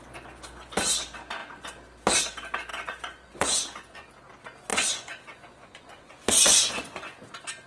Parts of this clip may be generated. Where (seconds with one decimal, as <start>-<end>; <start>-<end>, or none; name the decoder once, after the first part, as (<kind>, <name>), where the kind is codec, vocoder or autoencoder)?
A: 2.7-4.1 (vocoder, Vocos); 4.7-7.3